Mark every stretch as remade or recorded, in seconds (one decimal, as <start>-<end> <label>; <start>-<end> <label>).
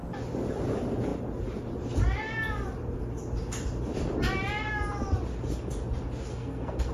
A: 0.0-6.3 recorded; 6.3-6.9 remade